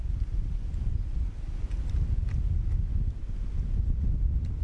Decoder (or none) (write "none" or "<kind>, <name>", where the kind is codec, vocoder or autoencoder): none